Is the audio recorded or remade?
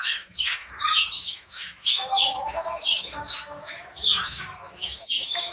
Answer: remade